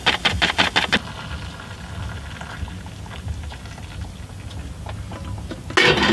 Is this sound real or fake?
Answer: real